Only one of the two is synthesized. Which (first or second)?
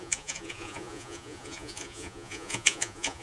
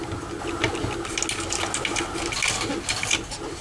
first